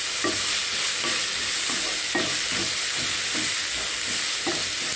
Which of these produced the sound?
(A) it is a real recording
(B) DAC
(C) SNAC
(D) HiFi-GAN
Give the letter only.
A